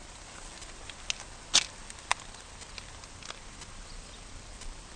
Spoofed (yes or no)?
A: no